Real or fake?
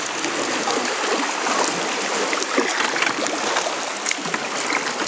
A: real